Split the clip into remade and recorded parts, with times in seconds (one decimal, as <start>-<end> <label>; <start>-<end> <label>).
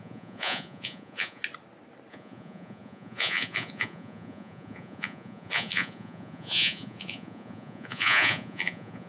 0.0-1.4 remade; 1.4-2.1 recorded; 2.1-9.1 remade